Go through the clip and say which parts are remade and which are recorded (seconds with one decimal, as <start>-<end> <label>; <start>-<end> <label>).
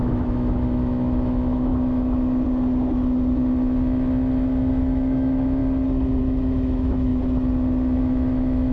0.0-1.7 remade; 1.7-4.7 recorded; 4.7-5.6 remade; 5.6-6.2 recorded; 6.2-7.1 remade; 7.1-8.0 recorded; 8.0-8.7 remade